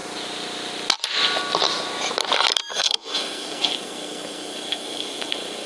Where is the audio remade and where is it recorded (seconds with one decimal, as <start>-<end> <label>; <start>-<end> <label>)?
0.0-2.7 recorded; 2.7-5.7 remade